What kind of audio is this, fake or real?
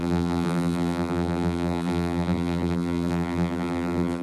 fake